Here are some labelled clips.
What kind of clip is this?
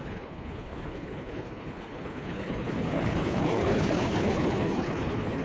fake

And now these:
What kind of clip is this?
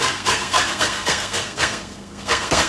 fake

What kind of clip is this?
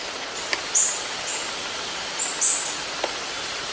real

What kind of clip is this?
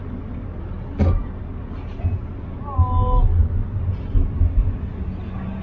real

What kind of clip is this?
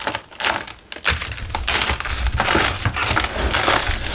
real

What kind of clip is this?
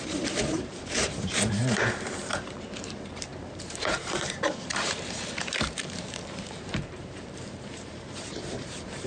fake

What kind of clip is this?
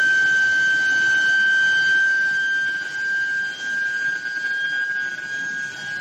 real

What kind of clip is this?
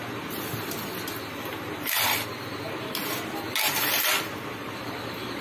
real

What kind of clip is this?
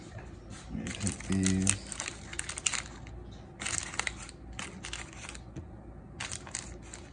real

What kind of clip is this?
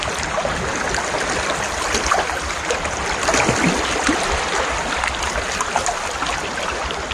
real